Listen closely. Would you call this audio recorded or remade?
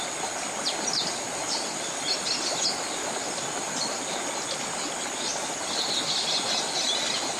recorded